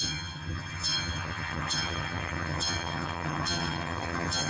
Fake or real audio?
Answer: fake